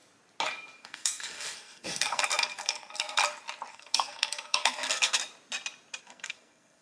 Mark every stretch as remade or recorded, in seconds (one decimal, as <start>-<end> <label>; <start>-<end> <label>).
0.0-0.8 recorded; 0.8-3.2 remade; 3.2-3.7 recorded; 3.7-5.2 remade; 5.2-6.0 recorded; 6.0-6.8 remade

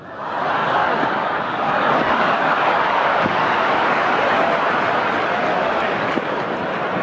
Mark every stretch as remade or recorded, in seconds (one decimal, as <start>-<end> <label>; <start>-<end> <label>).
0.0-0.6 recorded; 0.6-4.2 remade; 4.2-5.5 recorded; 5.5-6.4 remade; 6.4-7.0 recorded

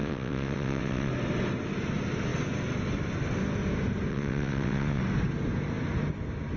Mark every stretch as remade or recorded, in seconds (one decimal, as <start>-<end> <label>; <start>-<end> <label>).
0.0-1.1 remade; 1.1-4.1 recorded; 4.1-5.0 remade; 5.0-6.6 recorded